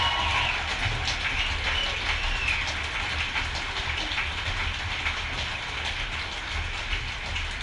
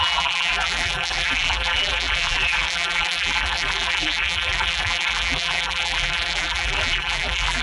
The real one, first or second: first